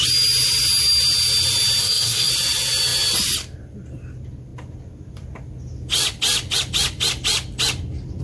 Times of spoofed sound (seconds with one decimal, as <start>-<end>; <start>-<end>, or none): 1.8-2.3